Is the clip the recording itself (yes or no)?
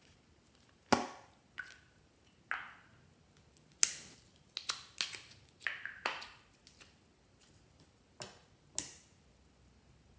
yes